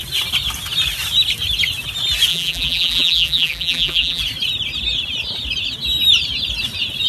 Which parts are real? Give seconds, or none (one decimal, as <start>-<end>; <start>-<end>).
0.0-2.3; 4.2-7.1